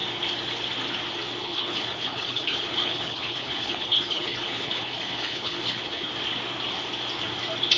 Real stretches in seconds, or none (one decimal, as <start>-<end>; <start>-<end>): 0.0-1.4; 6.1-7.8